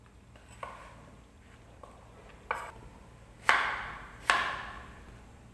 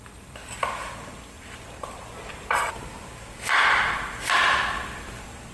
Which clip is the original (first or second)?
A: first